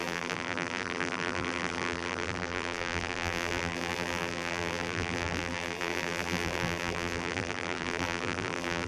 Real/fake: fake